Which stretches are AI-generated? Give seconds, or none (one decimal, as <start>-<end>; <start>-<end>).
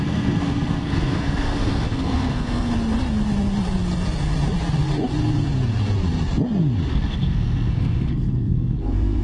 0.0-2.7; 6.9-9.2